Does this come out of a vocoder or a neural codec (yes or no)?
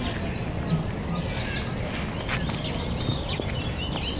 no